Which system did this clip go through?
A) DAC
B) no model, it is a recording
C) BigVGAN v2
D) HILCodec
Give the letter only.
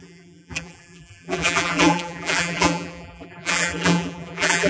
C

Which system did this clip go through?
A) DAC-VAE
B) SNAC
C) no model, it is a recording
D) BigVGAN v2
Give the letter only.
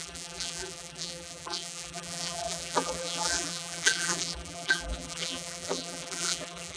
D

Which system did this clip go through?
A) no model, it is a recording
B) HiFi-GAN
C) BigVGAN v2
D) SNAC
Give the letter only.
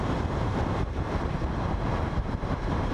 C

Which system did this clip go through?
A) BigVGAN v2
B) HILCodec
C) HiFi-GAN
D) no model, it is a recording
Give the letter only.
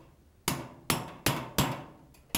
D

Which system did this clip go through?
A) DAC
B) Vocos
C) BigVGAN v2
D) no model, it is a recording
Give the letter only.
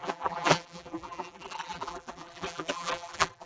C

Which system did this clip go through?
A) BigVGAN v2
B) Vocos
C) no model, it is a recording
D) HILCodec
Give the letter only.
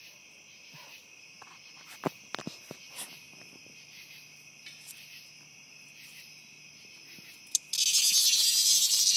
C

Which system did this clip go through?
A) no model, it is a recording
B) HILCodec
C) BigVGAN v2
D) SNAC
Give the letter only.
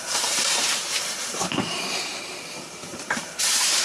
C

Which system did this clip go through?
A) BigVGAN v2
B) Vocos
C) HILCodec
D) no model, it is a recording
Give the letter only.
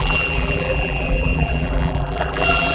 A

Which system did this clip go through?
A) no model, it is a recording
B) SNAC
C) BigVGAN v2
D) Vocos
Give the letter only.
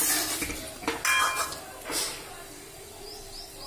A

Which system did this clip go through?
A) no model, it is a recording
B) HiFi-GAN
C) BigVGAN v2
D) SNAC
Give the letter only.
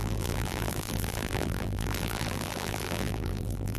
C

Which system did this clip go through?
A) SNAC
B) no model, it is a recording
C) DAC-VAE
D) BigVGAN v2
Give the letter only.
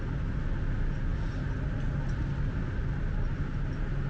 B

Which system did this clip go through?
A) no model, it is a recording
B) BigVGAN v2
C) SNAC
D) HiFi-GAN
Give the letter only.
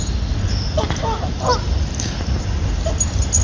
B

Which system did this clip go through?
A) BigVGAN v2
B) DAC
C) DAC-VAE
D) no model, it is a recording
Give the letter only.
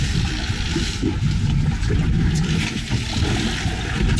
D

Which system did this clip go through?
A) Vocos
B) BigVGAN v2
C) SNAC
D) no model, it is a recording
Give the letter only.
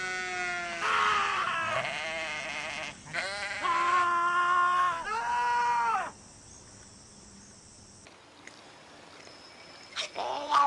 D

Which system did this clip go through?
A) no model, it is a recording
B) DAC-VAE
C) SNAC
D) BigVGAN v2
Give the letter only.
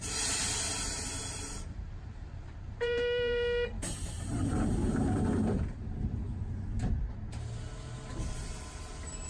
D